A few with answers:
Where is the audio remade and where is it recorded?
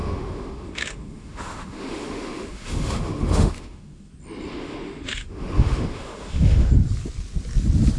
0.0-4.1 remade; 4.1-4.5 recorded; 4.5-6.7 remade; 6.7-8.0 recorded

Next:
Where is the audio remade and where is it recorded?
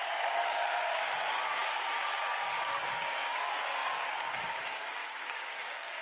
0.0-6.0 remade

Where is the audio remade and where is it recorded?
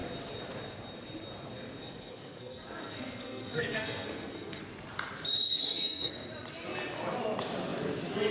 0.0-1.8 recorded; 1.8-4.6 remade; 4.6-5.6 recorded; 5.6-6.1 remade; 6.1-8.3 recorded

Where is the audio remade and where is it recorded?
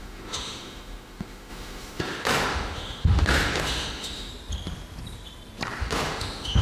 0.0-4.3 remade; 4.3-5.8 recorded; 5.8-6.6 remade